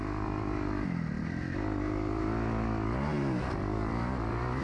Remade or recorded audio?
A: recorded